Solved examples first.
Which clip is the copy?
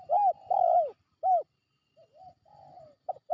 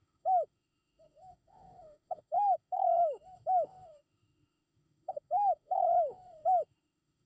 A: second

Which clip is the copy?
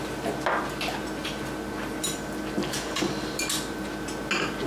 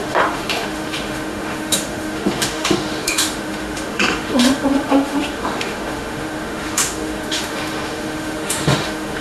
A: second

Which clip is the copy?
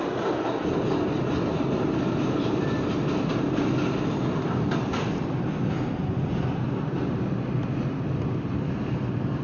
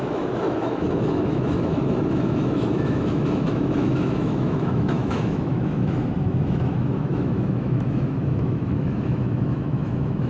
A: second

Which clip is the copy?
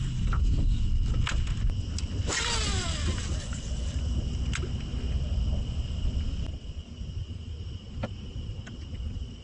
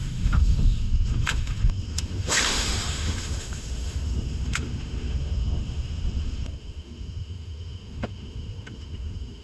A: second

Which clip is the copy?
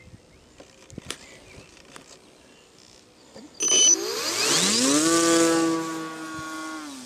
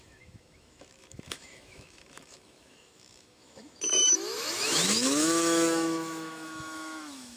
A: second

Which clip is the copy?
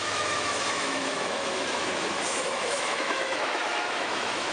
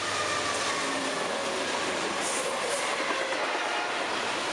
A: first